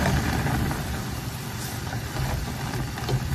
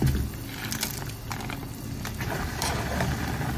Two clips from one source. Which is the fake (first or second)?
first